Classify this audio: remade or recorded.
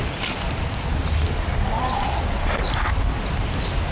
recorded